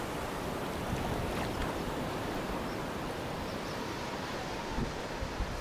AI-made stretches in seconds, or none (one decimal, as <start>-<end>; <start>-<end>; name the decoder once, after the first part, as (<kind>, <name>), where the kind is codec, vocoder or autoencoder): 1.6-5.0 (vocoder, BigVGAN v2)